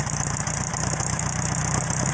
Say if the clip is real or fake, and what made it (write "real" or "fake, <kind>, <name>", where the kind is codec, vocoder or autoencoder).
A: fake, vocoder, BigVGAN v2